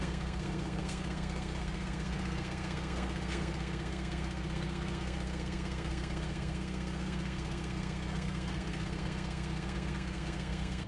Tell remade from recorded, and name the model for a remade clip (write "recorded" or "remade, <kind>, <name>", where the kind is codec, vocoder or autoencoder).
remade, codec, SNAC